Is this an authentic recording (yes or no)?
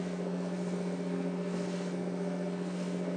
no